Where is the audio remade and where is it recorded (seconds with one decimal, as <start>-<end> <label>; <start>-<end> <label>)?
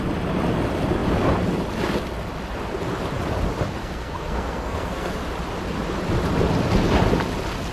0.0-3.8 recorded; 3.8-5.1 remade; 5.1-7.7 recorded